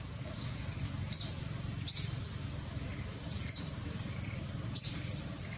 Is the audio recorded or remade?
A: remade